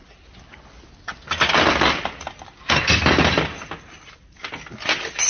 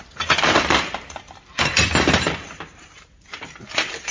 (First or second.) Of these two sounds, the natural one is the first